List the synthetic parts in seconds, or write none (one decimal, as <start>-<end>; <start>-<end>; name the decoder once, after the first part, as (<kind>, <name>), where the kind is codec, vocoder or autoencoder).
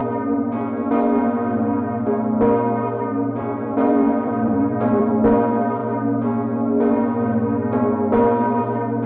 3.1-5.1 (vocoder, BigVGAN v2)